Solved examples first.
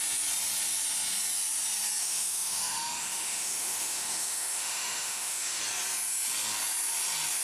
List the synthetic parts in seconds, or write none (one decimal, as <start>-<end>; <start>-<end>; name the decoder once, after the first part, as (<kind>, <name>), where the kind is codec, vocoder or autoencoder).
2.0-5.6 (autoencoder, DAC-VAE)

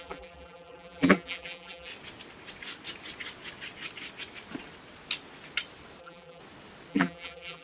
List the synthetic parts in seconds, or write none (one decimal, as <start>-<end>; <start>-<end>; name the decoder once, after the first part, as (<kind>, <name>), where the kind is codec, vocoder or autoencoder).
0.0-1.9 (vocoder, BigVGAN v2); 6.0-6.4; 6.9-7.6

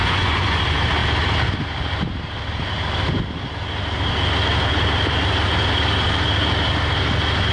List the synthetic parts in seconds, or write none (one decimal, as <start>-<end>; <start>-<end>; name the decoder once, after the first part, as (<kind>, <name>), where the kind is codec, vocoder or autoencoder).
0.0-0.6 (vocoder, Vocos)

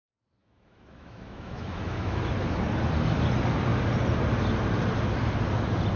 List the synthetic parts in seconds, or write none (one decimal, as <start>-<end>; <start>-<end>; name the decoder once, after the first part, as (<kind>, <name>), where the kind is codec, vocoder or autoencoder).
0.4-2.2 (autoencoder, DAC-VAE)

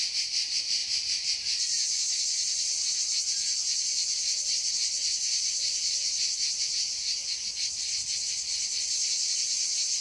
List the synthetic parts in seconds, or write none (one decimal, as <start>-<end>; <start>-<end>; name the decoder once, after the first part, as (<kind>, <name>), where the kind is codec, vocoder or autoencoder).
none